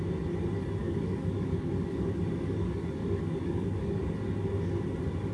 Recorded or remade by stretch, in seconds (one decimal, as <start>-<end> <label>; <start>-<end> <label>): 0.0-0.8 recorded; 0.8-4.0 remade; 4.0-5.3 recorded